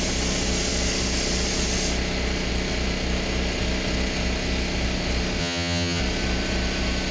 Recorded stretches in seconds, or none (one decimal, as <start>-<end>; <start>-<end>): 0.0-5.4; 6.0-7.1